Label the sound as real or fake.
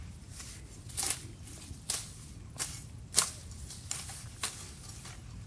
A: real